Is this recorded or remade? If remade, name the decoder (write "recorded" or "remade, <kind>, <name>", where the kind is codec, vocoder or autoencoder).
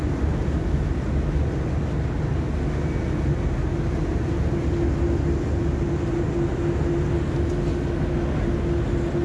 recorded